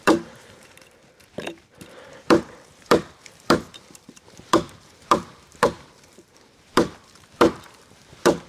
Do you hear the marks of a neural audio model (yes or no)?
yes